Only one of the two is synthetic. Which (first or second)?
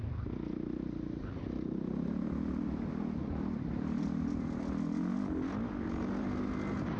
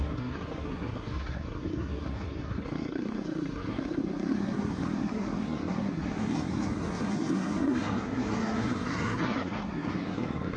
second